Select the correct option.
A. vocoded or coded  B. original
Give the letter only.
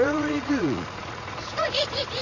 A